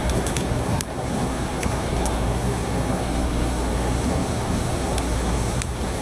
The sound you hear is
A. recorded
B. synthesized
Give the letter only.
B